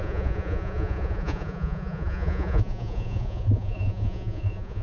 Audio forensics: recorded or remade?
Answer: remade